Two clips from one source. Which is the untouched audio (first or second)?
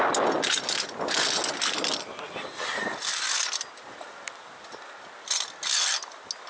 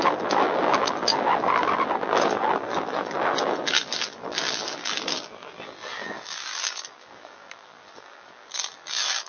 first